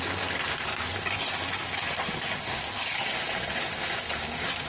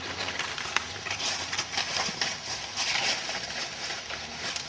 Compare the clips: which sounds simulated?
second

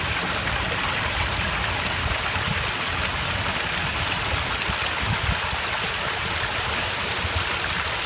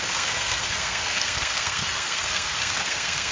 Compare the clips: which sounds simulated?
second